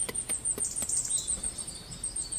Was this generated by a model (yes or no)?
no